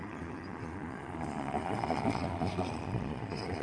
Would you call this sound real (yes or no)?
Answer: no